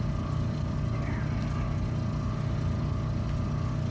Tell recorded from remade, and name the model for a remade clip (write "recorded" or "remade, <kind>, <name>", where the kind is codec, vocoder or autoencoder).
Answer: recorded